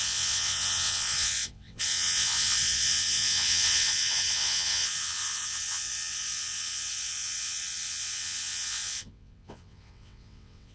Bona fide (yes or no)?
no